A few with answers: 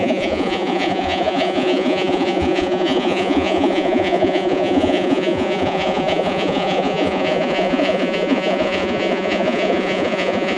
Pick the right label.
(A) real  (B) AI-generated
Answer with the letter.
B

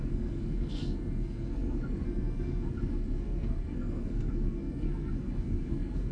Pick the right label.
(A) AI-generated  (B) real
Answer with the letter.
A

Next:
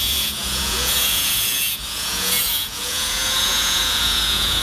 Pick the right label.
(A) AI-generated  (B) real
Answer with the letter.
A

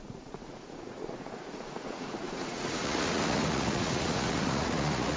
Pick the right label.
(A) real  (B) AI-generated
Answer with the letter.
B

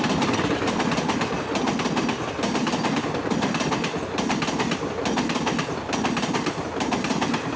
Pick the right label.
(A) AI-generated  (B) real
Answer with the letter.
B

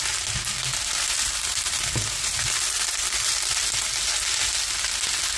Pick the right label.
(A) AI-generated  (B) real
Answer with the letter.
B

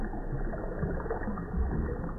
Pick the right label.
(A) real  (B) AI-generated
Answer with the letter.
A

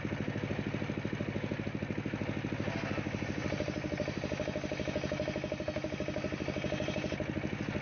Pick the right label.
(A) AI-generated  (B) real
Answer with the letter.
B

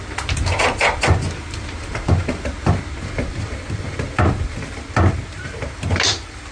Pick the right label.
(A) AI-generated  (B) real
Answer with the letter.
B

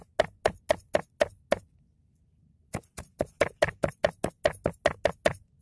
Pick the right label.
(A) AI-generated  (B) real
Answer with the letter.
B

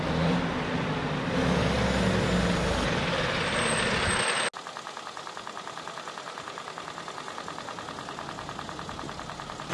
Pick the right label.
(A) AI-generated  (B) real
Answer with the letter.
B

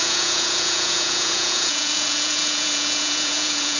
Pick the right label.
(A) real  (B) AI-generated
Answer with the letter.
B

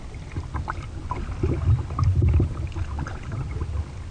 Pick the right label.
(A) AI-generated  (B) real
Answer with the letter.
B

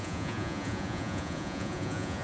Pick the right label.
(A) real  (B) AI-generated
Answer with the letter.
B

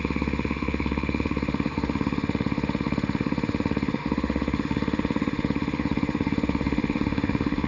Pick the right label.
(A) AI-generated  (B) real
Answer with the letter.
A